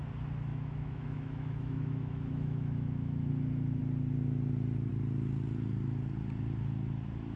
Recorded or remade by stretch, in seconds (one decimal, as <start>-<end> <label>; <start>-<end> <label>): 0.0-0.5 recorded; 0.5-3.3 remade; 3.3-7.4 recorded